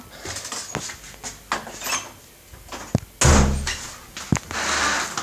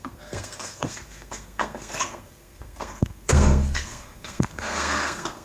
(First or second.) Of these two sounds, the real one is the first